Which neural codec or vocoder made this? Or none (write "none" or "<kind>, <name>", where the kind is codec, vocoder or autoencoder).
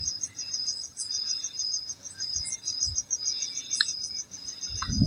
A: vocoder, Vocos